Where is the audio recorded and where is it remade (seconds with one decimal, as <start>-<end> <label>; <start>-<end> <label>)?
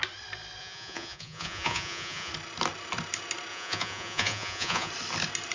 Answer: 0.0-0.6 recorded; 0.6-2.3 remade; 2.3-3.5 recorded; 3.5-4.9 remade; 4.9-5.5 recorded